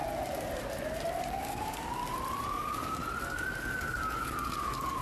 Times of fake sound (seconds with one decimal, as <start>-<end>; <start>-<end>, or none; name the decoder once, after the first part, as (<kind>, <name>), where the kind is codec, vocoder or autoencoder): 1.3-2.0 (codec, DAC); 2.5-3.0; 3.6-5.0